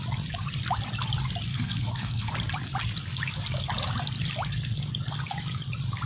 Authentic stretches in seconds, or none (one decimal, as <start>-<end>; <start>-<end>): 0.0-1.5; 2.3-6.1